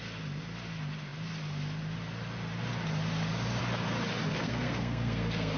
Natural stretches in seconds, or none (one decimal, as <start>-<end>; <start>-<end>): 0.0-4.3